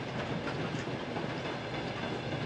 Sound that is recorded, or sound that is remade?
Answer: recorded